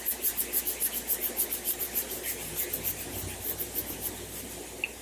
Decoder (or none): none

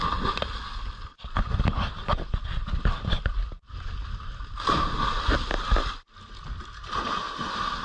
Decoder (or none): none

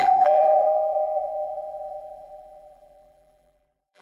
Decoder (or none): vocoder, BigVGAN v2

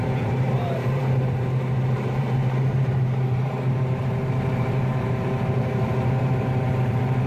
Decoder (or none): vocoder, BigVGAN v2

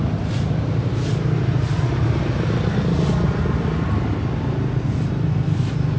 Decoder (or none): none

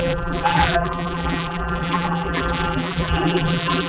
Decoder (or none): vocoder, BigVGAN v2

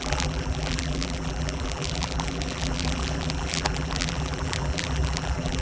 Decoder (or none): vocoder, BigVGAN v2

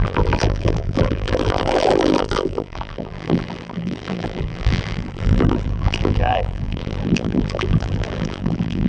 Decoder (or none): vocoder, BigVGAN v2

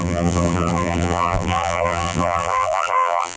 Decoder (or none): vocoder, BigVGAN v2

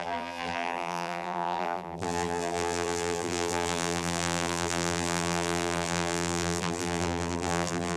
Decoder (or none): vocoder, BigVGAN v2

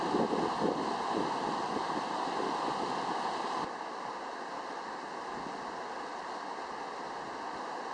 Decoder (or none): none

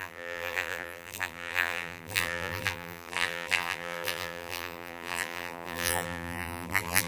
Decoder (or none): vocoder, BigVGAN v2